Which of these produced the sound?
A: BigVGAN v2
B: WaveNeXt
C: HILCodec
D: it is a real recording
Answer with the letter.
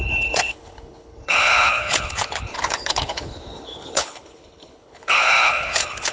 C